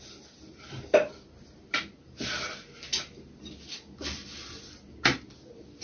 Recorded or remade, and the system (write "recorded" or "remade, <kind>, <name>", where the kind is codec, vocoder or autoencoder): recorded